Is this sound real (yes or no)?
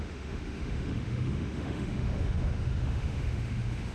no